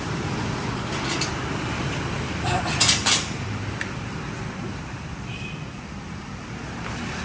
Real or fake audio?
fake